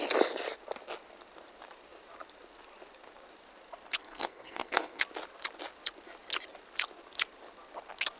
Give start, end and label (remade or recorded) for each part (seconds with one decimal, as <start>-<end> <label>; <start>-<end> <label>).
0.0-4.0 recorded; 4.0-5.0 remade; 5.0-8.2 recorded